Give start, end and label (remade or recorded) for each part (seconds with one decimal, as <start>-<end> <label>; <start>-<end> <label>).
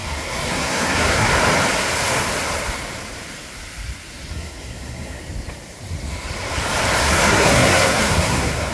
0.0-1.3 remade; 1.3-4.3 recorded; 4.3-5.2 remade; 5.2-7.0 recorded; 7.0-8.7 remade